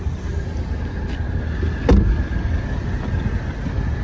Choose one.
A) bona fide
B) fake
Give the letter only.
A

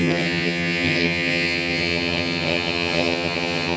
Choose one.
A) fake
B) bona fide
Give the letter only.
A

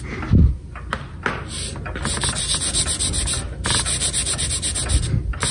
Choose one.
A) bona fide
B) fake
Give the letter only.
A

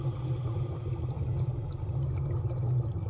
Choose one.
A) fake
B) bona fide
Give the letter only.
B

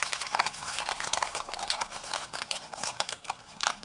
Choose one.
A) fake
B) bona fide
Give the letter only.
A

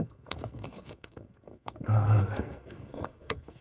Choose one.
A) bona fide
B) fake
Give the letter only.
B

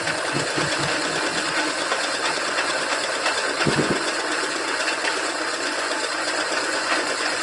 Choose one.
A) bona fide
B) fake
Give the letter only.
B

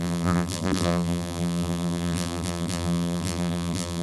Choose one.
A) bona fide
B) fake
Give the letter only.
B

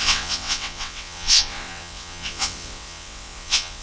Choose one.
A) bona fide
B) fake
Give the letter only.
B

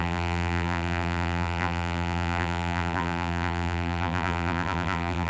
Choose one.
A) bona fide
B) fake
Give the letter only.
B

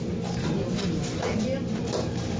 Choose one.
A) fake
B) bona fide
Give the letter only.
B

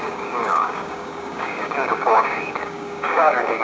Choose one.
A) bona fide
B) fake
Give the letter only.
B